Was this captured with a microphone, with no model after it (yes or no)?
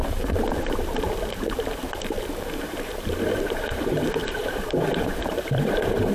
no